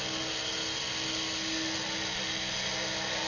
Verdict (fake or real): real